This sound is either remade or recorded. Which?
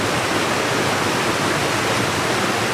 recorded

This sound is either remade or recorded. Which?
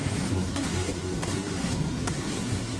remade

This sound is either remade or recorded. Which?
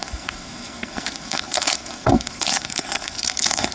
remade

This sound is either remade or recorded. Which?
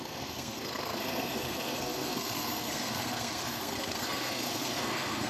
remade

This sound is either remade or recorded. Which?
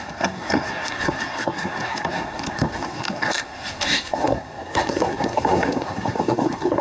remade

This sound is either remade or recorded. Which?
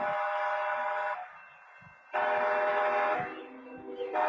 recorded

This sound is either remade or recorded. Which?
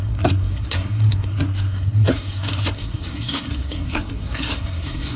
remade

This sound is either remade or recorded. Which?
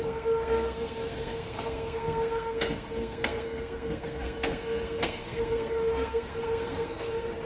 remade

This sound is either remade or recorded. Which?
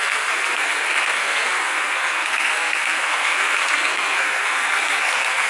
remade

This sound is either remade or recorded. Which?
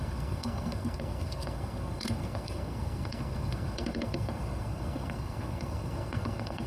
remade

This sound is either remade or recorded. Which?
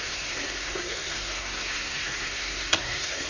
remade